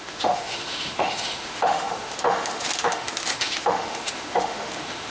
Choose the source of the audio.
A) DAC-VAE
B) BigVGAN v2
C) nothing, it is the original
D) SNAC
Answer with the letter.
A